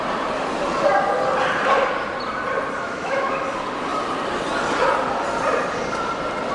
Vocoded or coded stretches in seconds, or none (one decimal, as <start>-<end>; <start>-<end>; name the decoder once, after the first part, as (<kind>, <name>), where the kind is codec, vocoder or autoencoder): 2.8-3.3 (autoencoder, DAC-VAE)